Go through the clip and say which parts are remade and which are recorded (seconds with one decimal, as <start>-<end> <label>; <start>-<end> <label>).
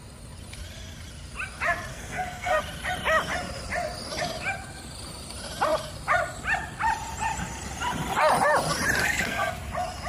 0.0-1.9 recorded; 1.9-2.6 remade; 2.6-9.0 recorded; 9.0-9.5 remade; 9.5-10.1 recorded